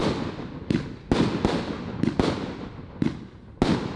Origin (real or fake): real